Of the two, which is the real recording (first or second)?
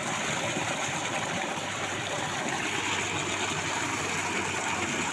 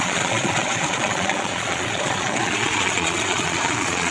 first